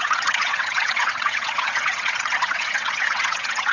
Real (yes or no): no